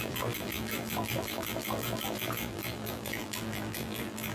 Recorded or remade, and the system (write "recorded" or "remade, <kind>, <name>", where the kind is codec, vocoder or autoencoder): remade, vocoder, BigVGAN v2